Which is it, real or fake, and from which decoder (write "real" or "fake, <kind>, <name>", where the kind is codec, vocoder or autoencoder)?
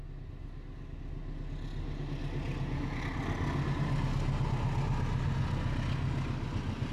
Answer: real